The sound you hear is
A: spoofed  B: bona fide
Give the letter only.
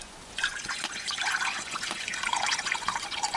A